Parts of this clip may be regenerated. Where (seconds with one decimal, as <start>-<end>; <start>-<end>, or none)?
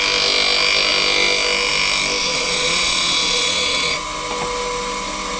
2.2-4.0